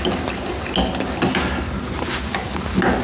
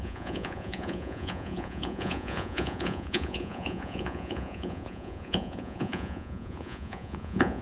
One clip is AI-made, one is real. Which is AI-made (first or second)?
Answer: second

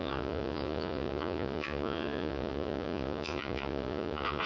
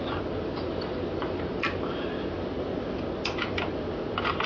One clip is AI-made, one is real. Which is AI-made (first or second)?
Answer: first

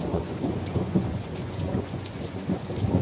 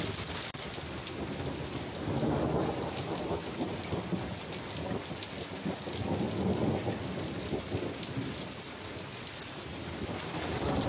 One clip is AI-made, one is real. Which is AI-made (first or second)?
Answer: first